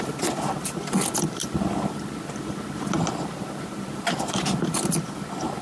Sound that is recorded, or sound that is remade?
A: recorded